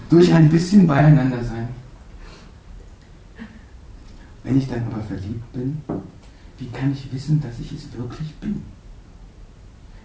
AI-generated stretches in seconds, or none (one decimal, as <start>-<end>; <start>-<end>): 0.0-1.0; 4.0-4.8